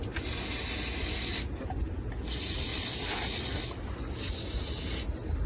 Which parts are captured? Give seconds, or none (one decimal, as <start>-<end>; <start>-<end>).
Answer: 0.0-5.5